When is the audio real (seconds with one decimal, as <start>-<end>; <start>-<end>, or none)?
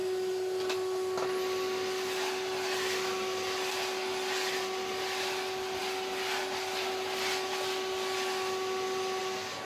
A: 0.0-9.6